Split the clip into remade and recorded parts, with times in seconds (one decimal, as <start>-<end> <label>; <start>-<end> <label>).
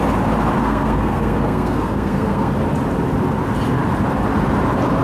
0.0-0.6 recorded; 0.6-2.5 remade; 2.5-5.0 recorded